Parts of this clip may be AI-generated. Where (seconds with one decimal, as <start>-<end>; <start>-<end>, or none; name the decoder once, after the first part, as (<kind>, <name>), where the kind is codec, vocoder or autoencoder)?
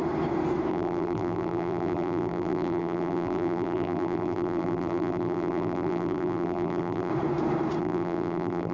0.7-7.1 (vocoder, BigVGAN v2); 7.8-8.7